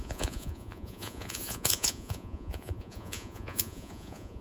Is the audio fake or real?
fake